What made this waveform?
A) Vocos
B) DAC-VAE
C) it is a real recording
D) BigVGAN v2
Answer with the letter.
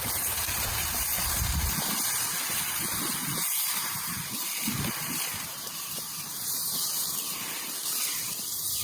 D